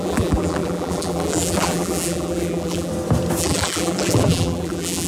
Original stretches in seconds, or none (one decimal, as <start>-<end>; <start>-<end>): 2.9-3.4